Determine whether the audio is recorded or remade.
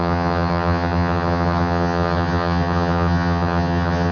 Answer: remade